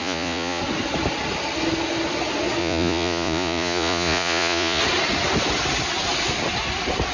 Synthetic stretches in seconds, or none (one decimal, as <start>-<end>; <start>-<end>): 0.0-0.6; 2.6-4.8